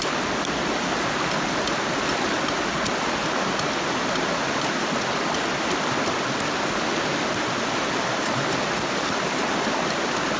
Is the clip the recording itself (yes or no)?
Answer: yes